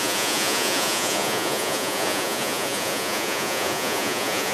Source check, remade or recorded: remade